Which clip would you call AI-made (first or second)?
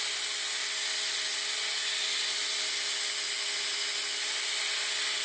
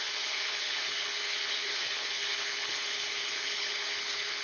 second